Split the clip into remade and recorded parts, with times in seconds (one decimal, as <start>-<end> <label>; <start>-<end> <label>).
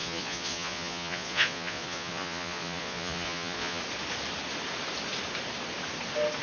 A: 0.0-3.8 remade; 3.8-6.4 recorded